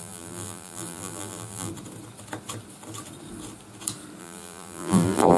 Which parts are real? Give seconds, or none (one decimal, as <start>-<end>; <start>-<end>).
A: 1.7-4.2